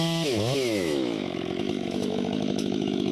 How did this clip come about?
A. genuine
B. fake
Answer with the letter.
B